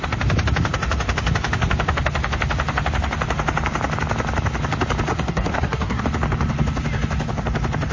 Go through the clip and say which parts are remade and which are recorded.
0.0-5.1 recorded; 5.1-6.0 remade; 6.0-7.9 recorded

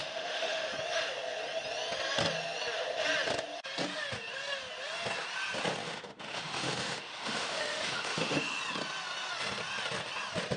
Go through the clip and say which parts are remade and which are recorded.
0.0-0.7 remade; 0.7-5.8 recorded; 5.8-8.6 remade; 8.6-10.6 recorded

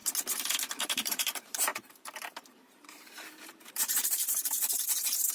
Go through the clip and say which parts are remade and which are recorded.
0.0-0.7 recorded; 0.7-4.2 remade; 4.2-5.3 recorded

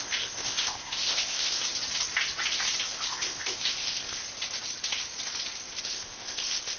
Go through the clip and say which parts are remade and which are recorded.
0.0-1.6 remade; 1.6-2.9 recorded; 2.9-4.2 remade; 4.2-5.8 recorded; 5.8-6.8 remade